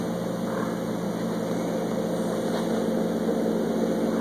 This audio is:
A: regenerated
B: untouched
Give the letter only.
B